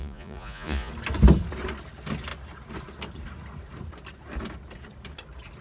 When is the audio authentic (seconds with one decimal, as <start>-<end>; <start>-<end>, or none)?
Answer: 0.9-5.6